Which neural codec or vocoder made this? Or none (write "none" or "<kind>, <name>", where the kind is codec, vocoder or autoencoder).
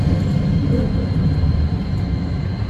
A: none